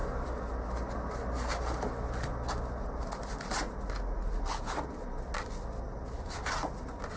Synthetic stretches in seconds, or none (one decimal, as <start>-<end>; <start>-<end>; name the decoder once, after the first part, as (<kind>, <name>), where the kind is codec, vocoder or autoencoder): none